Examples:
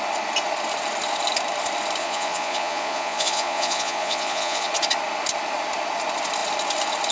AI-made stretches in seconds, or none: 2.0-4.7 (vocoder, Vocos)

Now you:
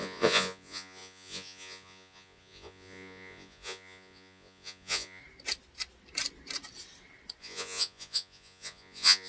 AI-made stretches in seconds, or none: 0.0-5.2 (vocoder, Vocos); 7.4-9.3

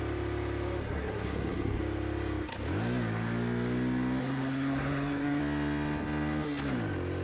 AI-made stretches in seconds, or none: 0.8-1.8 (codec, SNAC); 4.2-5.4